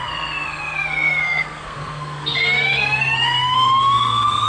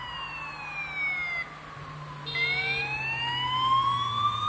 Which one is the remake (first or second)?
first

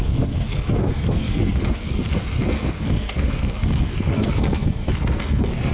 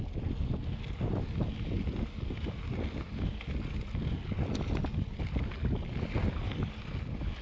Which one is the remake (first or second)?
first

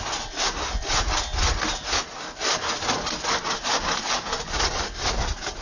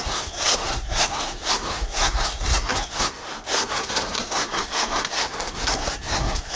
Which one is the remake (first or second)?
second